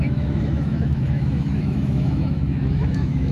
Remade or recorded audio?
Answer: remade